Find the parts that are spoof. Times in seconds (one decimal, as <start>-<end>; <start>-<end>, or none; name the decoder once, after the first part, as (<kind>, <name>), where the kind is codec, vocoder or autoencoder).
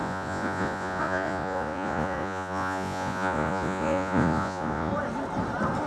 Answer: 0.0-4.9 (vocoder, Vocos)